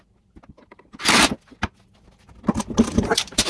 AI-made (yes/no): no